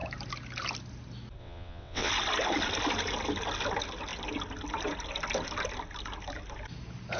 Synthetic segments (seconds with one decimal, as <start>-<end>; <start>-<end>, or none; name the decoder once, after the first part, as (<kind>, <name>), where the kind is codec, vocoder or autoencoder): 1.4-2.1 (vocoder, WaveNeXt)